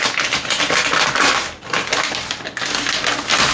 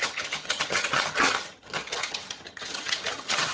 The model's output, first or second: second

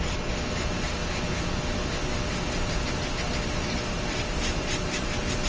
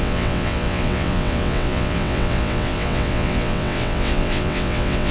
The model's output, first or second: second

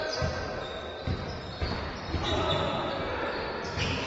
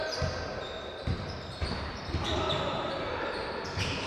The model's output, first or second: second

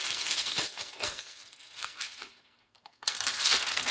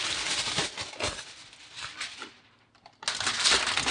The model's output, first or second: first